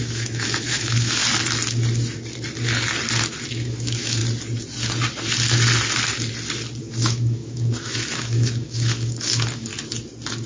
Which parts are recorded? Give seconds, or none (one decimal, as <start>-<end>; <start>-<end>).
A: 1.2-3.5; 4.2-6.8; 9.7-10.5

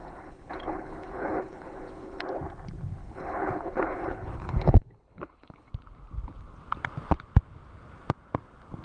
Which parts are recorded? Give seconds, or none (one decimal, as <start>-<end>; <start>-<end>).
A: 2.2-3.0; 5.7-8.8